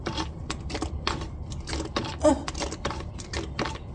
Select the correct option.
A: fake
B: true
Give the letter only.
B